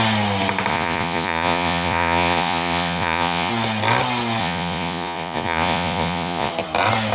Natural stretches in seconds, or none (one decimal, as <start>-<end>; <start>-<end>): 0.0-0.7; 3.5-4.4; 6.5-7.1